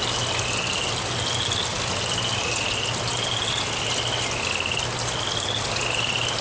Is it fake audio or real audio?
real